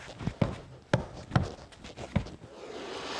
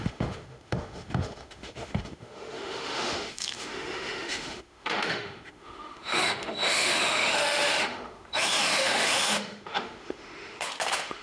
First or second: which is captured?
first